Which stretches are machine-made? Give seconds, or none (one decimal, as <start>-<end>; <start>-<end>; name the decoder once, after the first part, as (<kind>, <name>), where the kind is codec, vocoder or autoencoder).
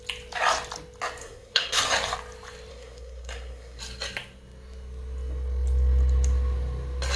1.2-1.8 (codec, SNAC); 2.7-3.8